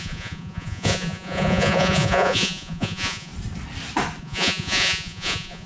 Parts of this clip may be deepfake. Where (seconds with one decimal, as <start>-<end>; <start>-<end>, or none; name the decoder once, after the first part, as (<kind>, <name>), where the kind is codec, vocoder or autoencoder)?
0.0-3.3 (vocoder, Vocos); 4.2-5.7